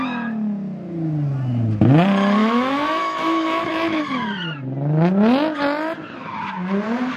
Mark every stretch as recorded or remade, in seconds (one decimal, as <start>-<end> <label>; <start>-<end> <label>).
0.0-2.4 recorded; 2.4-4.0 remade; 4.0-7.2 recorded